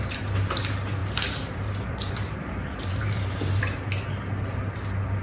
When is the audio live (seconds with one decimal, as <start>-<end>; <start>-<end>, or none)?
0.0-1.0; 3.6-5.2